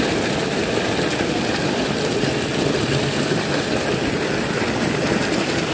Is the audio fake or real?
real